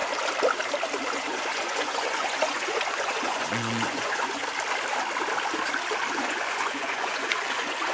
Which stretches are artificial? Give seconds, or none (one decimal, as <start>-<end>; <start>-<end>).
1.1-4.4; 6.1-7.9